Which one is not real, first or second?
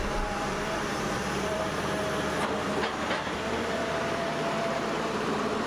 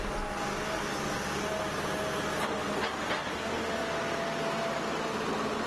first